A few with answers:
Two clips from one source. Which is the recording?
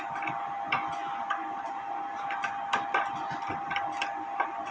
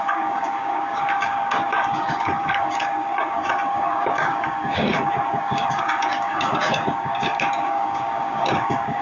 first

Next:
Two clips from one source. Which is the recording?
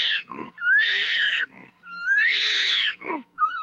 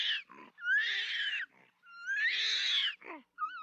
second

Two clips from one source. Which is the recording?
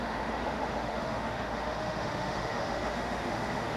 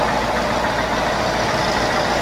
second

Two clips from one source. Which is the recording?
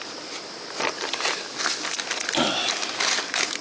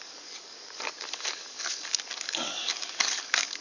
first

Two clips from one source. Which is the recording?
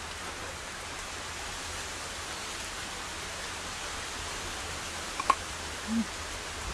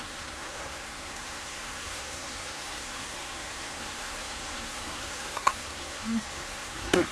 first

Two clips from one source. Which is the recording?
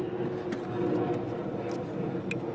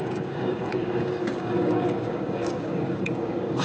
first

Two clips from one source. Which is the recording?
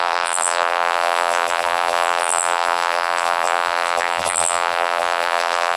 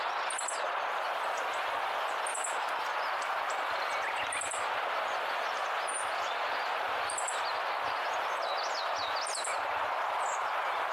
second